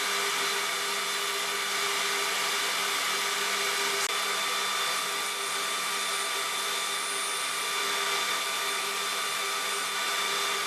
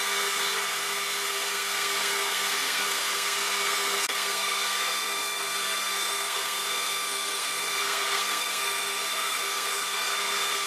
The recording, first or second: first